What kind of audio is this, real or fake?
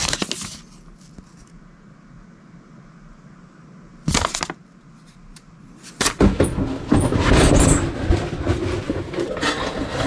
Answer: real